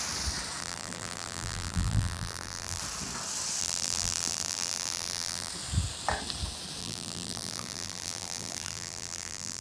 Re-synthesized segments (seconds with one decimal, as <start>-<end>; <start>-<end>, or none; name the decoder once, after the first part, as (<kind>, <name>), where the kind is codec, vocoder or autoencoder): 0.6-2.8 (vocoder, BigVGAN v2); 3.6-5.5; 6.8-9.6